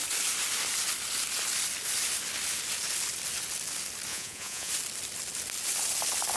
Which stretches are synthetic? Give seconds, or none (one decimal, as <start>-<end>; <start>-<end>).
4.1-4.7